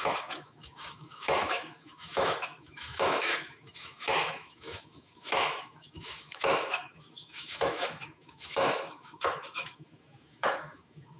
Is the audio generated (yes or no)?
yes